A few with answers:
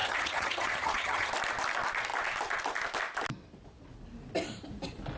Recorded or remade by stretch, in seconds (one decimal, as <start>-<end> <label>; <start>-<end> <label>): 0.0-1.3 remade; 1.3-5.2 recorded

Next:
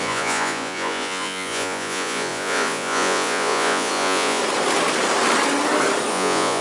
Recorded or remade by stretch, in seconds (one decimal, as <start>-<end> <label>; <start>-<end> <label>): 0.0-4.4 remade; 4.4-6.1 recorded; 6.1-6.6 remade

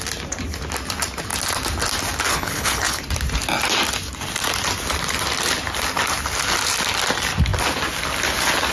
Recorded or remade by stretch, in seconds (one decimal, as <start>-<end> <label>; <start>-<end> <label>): 0.0-2.3 recorded; 2.3-3.0 remade; 3.0-8.7 recorded